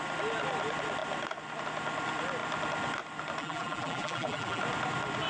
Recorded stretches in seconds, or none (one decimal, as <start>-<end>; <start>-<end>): 0.0-3.4; 4.6-5.3